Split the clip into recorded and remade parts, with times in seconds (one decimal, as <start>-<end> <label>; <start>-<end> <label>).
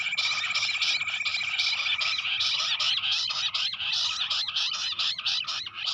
0.0-5.9 recorded